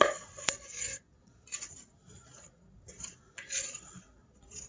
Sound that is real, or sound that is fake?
fake